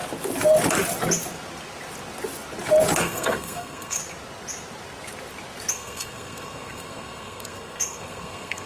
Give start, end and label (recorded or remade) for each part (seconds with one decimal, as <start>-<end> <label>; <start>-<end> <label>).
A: 0.0-3.0 recorded; 3.0-4.0 remade; 4.0-5.7 recorded; 5.7-8.7 remade